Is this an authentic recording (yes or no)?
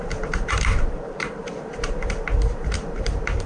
no